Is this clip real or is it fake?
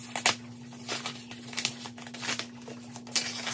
real